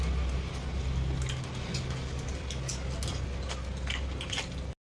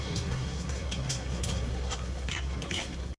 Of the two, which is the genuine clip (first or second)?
first